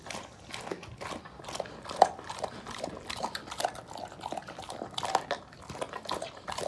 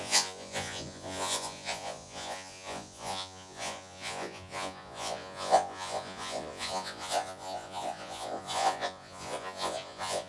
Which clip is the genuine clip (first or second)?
first